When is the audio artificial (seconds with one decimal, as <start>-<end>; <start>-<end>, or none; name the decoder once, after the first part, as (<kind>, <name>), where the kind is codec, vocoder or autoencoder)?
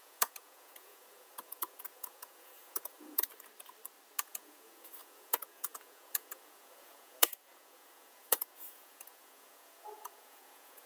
0.0-3.3 (vocoder, Vocos); 4.2-10.9